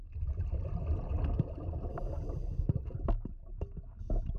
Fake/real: real